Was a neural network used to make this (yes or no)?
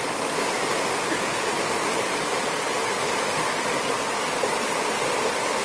no